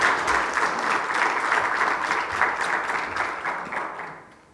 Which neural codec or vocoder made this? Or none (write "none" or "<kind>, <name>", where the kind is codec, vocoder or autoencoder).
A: none